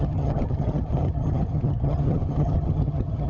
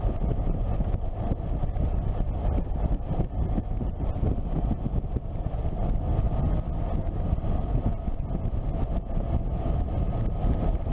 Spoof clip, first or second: first